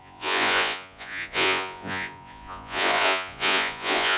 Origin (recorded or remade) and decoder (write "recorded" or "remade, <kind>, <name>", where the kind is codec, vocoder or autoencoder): remade, vocoder, Vocos